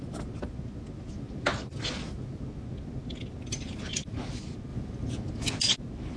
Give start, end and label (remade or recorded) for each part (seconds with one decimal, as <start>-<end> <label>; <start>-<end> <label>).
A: 0.0-6.2 recorded